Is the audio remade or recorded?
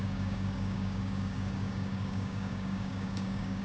remade